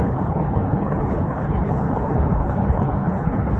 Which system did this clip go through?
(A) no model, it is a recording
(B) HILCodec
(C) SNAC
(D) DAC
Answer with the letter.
B